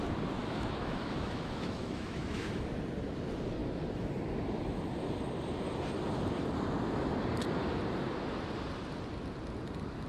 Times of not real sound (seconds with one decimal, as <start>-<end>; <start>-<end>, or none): 0.4-2.7